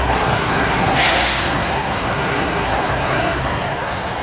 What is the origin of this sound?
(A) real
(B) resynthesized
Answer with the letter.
B